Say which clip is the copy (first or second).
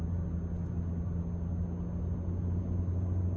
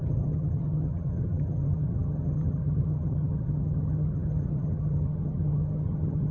second